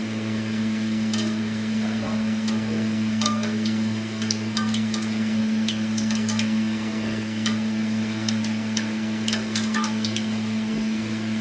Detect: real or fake fake